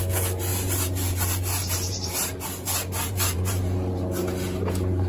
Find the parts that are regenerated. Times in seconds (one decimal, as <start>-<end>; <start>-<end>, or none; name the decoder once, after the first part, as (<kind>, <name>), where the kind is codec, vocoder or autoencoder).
0.5-3.6 (vocoder, BigVGAN v2)